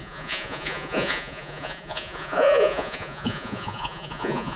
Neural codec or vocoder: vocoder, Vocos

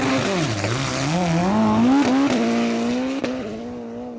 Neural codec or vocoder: none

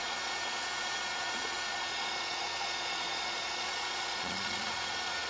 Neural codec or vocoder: vocoder, Vocos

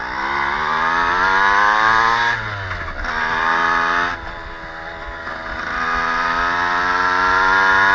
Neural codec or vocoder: none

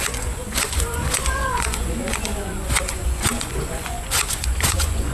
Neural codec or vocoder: vocoder, Vocos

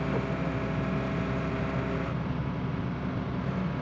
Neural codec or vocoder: none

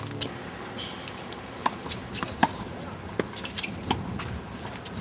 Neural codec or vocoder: none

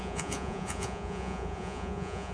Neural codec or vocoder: vocoder, Vocos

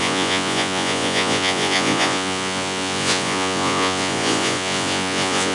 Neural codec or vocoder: vocoder, Vocos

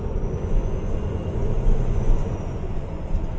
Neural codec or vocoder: vocoder, Vocos